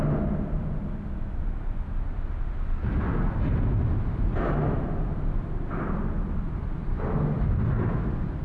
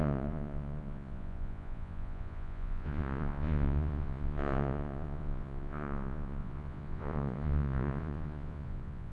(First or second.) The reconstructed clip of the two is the second